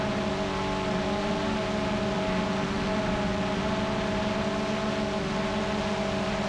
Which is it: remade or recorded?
recorded